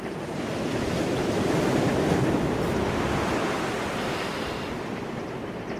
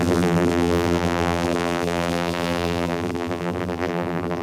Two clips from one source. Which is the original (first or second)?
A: first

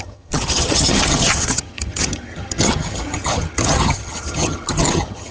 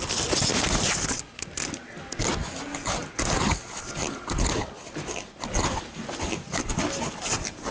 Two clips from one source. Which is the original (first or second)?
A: second